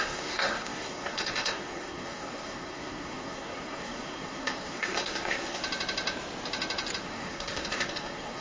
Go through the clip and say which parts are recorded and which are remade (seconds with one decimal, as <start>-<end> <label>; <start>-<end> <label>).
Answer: 0.0-5.6 remade; 5.6-7.0 recorded; 7.0-8.4 remade